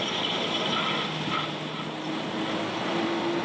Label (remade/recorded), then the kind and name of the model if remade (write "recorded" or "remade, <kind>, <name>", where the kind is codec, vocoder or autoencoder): recorded